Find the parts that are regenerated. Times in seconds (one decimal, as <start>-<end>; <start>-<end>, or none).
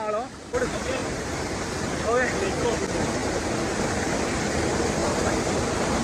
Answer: 1.0-1.6; 5.0-6.0